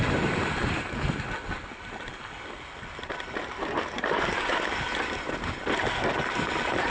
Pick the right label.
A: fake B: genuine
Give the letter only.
B